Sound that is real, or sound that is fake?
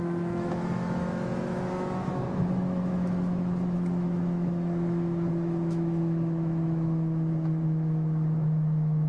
fake